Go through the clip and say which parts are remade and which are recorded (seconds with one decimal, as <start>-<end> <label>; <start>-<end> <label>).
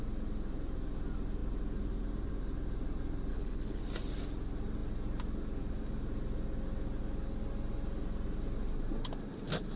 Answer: 0.0-3.3 recorded; 3.3-3.8 remade; 3.8-9.8 recorded